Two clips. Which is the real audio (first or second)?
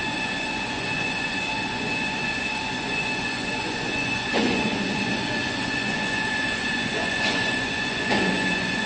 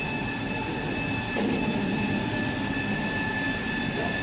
second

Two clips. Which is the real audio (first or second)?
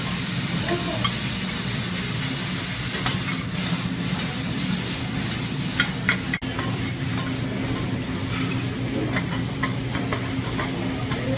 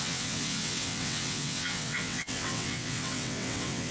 first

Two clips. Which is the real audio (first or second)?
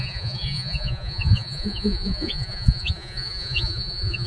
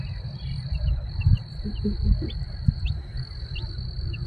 second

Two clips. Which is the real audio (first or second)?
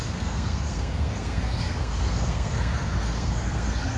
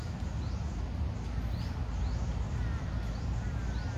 second